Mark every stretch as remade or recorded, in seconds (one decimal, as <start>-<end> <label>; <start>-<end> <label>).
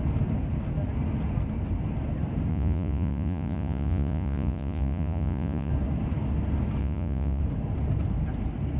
0.0-2.5 recorded; 2.5-5.7 remade; 5.7-6.8 recorded; 6.8-7.4 remade; 7.4-8.8 recorded